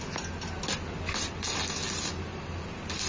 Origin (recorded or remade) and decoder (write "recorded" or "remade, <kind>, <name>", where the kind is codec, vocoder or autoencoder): recorded